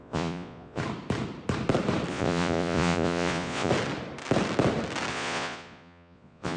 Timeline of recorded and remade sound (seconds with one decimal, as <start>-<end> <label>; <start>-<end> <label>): 0.0-0.8 remade; 0.8-2.1 recorded; 2.1-3.7 remade; 3.7-5.1 recorded; 5.1-6.6 remade